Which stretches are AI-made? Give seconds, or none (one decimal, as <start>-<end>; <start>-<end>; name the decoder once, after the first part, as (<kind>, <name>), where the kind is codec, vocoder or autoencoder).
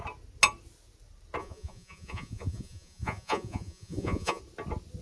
1.4-4.4 (vocoder, Vocos)